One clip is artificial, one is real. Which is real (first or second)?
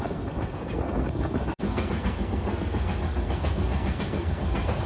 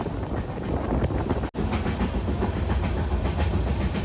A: second